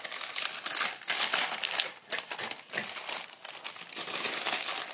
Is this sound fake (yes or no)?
no